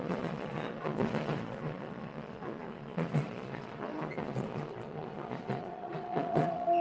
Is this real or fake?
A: fake